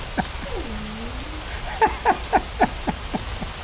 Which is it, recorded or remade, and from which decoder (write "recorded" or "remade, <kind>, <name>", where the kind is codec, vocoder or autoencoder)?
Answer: recorded